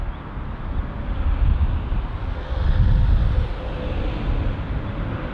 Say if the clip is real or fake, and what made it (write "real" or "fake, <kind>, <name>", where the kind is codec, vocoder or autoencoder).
real